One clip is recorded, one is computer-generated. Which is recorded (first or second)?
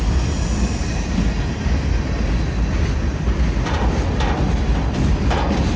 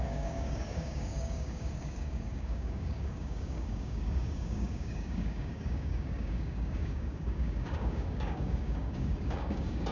first